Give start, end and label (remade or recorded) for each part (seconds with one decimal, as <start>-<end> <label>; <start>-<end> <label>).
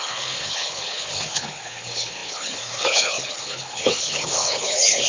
0.0-5.1 remade